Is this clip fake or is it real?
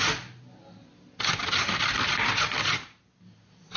real